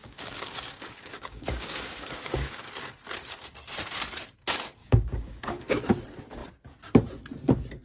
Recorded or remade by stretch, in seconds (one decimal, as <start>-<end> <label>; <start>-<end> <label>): 0.0-2.7 remade; 2.7-4.8 recorded; 4.8-5.9 remade; 5.9-7.8 recorded